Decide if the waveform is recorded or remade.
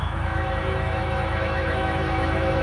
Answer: remade